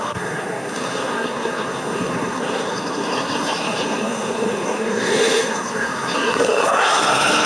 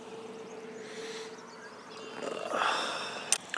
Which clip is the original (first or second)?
second